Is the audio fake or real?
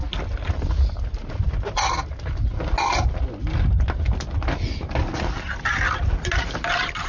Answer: real